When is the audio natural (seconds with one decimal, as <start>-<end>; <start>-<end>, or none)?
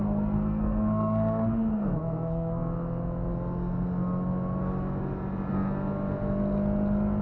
2.6-7.2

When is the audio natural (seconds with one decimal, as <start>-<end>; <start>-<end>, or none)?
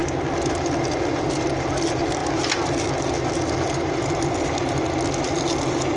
0.0-6.0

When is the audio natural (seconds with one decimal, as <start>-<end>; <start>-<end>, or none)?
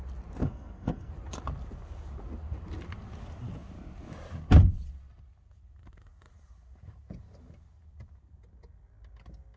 0.0-0.4; 1.1-9.6